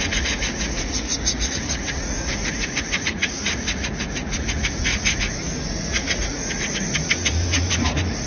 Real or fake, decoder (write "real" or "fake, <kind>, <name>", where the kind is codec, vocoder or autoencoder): fake, vocoder, Vocos